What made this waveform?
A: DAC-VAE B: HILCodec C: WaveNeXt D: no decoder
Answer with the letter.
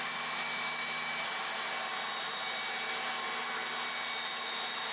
D